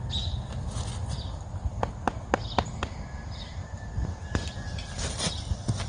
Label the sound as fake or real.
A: real